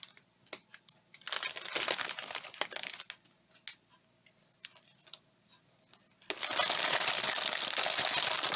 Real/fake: real